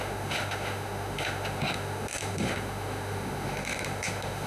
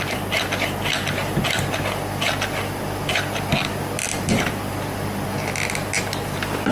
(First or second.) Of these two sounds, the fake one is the first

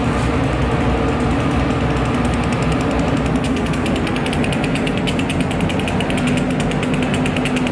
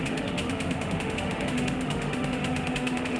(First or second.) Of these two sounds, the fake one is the second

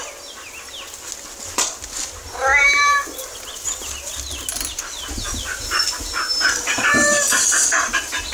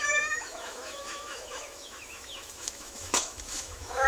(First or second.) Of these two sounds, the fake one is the second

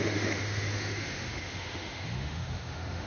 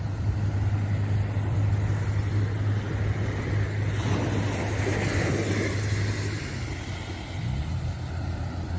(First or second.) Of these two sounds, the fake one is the first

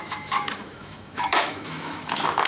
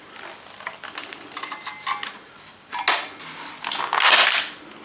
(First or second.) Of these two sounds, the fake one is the first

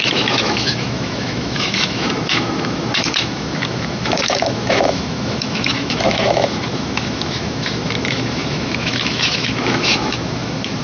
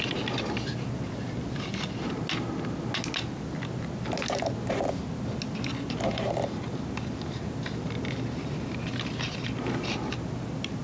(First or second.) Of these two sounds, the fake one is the first